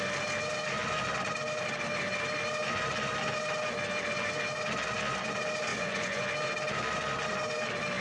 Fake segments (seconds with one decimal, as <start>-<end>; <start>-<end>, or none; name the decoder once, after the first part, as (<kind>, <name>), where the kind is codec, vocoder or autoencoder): 5.7-6.3 (vocoder, Vocos)